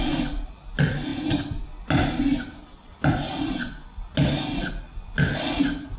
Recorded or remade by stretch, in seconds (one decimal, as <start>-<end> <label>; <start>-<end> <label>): 0.0-6.0 recorded